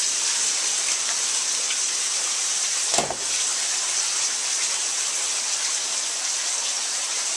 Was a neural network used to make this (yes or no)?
no